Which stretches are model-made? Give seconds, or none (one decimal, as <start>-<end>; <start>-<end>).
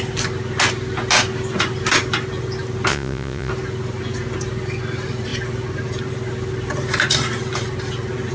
2.9-3.5